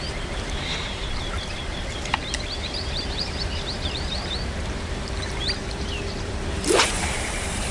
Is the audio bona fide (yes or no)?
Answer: no